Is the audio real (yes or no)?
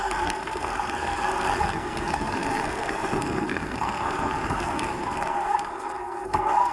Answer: no